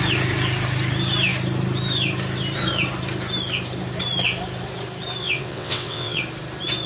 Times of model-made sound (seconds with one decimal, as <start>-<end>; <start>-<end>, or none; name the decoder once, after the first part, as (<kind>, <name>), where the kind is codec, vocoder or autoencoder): 5.2-6.2 (vocoder, WaveNeXt)